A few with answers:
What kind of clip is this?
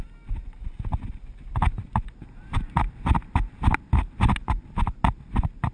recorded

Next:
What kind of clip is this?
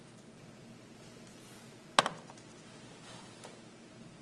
recorded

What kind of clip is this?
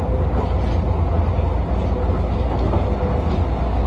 recorded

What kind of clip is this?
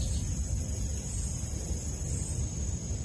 recorded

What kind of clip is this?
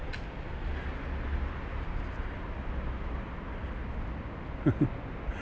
recorded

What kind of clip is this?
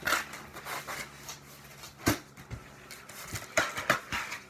recorded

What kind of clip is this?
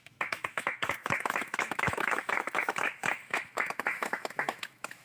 remade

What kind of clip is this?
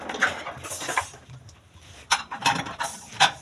recorded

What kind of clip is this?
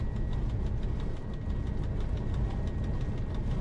recorded